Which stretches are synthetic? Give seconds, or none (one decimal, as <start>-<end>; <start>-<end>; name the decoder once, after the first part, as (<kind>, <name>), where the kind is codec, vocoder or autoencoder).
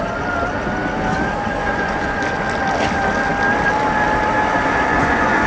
1.6-2.2 (vocoder, Vocos); 4.9-5.5